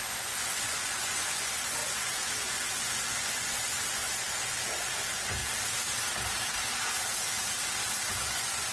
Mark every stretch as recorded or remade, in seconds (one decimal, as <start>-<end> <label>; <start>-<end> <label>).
0.0-5.4 remade; 5.4-8.1 recorded; 8.1-8.7 remade